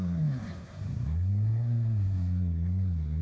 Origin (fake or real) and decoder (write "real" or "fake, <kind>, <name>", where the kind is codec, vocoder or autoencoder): fake, codec, SNAC